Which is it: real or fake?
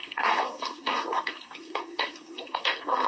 fake